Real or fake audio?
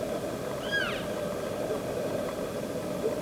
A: real